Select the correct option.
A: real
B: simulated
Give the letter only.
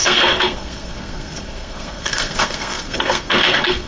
B